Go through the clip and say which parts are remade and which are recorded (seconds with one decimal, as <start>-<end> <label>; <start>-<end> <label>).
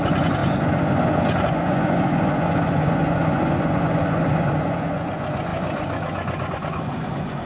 0.0-7.5 remade